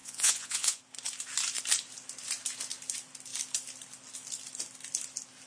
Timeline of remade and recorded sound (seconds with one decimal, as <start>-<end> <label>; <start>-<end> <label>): 0.0-0.8 remade; 0.8-5.5 recorded